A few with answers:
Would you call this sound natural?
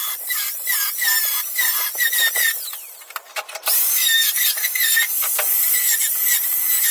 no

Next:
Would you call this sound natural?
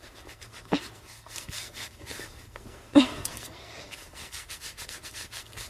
no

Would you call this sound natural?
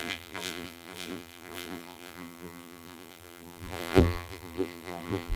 no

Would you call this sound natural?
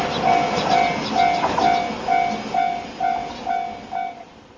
yes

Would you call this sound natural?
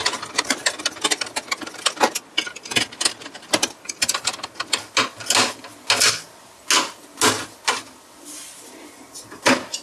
yes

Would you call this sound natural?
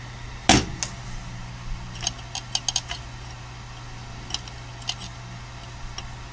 yes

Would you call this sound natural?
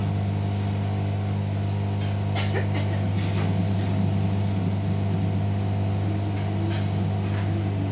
yes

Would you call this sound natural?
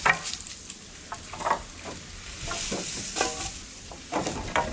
yes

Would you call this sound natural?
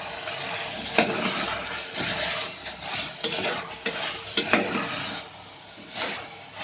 yes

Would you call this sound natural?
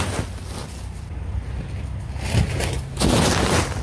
yes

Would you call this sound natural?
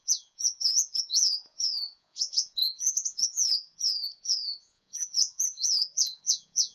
no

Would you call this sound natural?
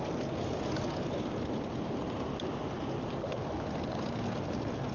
yes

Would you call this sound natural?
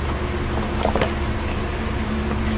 yes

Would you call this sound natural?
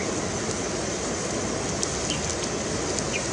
yes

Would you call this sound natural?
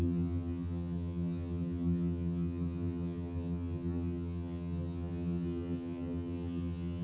no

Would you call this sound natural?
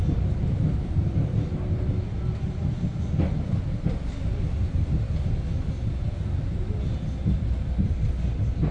yes